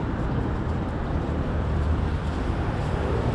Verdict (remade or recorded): remade